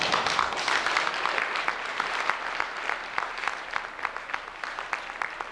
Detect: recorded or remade recorded